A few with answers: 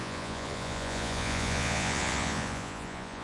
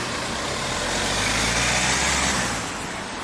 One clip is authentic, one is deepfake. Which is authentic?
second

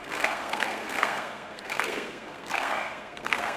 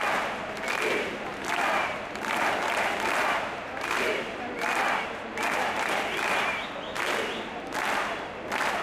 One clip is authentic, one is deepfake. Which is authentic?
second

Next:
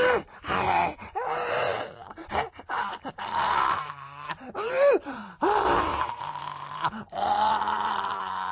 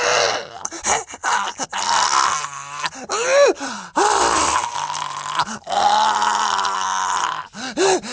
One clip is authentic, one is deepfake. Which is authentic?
second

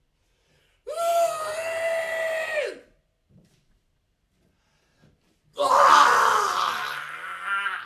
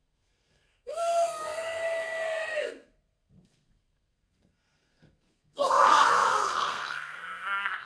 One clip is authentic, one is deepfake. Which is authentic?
first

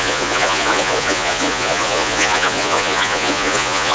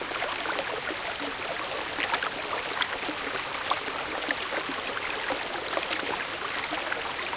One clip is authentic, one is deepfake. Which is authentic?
second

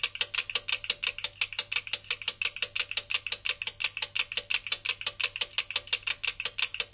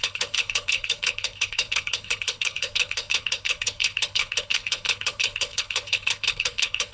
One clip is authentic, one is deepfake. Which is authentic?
first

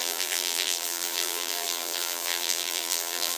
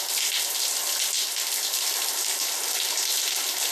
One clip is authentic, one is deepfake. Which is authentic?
second